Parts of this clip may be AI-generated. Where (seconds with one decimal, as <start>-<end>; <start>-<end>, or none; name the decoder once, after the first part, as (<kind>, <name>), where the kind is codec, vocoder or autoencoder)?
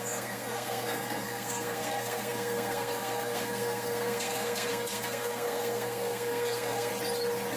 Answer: 0.0-6.9 (codec, SNAC)